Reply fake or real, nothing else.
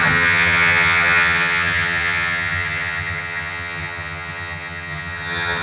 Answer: fake